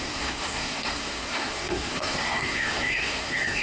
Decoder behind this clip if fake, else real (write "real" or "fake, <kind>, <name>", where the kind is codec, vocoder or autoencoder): fake, codec, SNAC